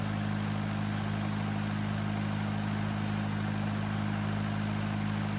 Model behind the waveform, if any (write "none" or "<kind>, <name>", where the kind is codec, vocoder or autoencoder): none